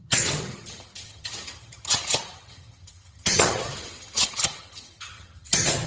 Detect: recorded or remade remade